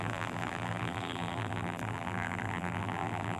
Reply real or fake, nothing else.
fake